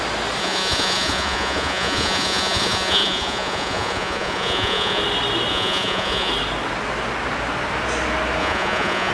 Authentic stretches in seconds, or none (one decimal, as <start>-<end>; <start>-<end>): 0.0-0.4; 5.0-5.5; 6.3-8.4